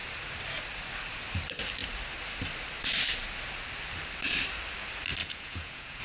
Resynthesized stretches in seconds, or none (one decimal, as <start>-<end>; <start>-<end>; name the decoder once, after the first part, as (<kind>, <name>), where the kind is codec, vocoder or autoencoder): 5.2-6.0 (vocoder, Vocos)